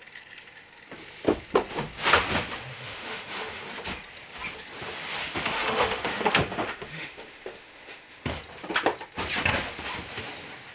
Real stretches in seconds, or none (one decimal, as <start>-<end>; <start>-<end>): 0.0-2.7; 3.6-5.2; 8.3-10.7